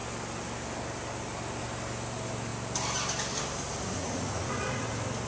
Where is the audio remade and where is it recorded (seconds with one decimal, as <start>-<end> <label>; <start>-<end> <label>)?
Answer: 0.0-4.0 recorded; 4.0-4.8 remade; 4.8-5.3 recorded